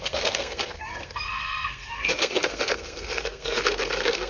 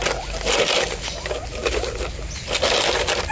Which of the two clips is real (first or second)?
second